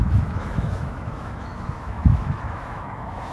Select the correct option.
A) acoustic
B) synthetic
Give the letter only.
B